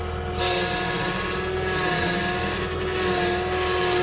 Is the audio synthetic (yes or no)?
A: no